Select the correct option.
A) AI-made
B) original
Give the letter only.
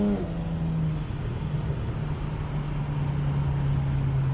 B